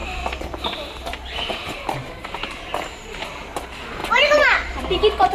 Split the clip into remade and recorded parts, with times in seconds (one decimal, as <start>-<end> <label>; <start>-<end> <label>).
0.0-4.0 recorded; 4.0-4.8 remade; 4.8-5.3 recorded